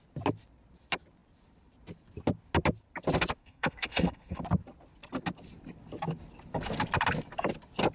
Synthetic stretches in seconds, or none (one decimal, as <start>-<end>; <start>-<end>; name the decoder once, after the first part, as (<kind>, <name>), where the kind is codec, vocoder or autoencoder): 3.4-4.4 (codec, SNAC)